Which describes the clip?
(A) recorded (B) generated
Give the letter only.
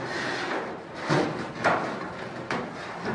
A